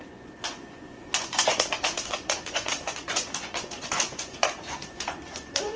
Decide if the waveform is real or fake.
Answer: fake